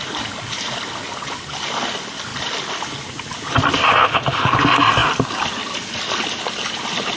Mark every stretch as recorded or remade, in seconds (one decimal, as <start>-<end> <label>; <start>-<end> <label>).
0.0-4.0 recorded; 4.0-4.6 remade; 4.6-7.2 recorded